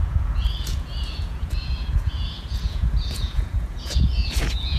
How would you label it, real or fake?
fake